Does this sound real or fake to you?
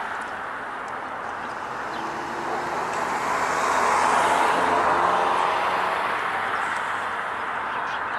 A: real